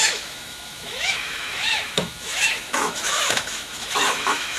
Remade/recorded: remade